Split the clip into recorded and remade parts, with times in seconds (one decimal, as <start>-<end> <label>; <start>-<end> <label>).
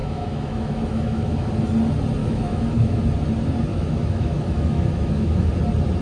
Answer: 0.0-1.5 remade; 1.5-2.2 recorded; 2.2-3.0 remade; 3.0-3.7 recorded; 3.7-5.5 remade; 5.5-6.0 recorded